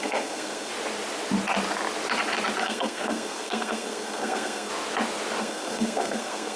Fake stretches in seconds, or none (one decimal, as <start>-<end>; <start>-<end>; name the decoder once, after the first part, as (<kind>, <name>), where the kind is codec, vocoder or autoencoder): 0.0-0.7 (codec, SNAC); 2.6-4.7; 5.4-6.6